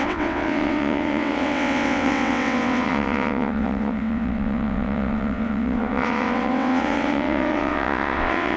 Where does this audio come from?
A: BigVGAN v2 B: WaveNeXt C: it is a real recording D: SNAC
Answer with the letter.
B